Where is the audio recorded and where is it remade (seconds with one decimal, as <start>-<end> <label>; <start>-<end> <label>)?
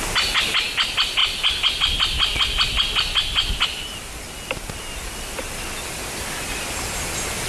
0.0-7.5 recorded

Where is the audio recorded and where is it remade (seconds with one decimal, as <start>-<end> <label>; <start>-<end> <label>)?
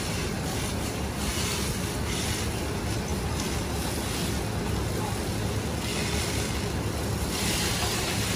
0.0-8.4 recorded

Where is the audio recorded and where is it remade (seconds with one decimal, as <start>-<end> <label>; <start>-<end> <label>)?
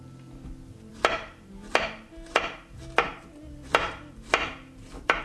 0.0-5.2 remade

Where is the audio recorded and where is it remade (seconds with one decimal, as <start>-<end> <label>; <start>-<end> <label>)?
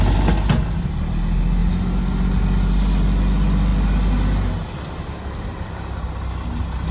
0.0-6.9 recorded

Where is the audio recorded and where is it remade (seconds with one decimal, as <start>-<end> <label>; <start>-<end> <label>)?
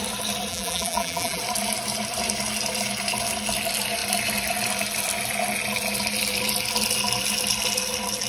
0.0-0.5 recorded; 0.5-1.4 remade; 1.4-8.3 recorded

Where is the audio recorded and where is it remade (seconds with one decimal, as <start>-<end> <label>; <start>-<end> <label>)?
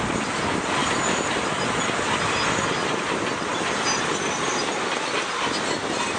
0.0-0.8 recorded; 0.8-1.6 remade; 1.6-3.5 recorded; 3.5-4.6 remade; 4.6-6.2 recorded